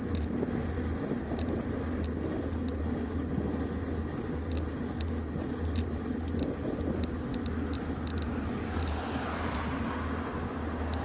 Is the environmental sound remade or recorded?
recorded